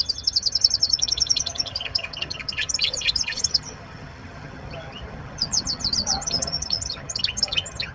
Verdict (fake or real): fake